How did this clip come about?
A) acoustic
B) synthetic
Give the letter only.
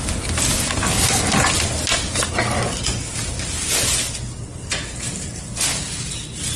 A